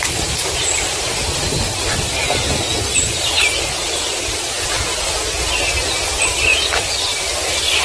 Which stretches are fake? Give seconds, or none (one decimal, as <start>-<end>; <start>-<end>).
2.2-3.0; 6.5-7.0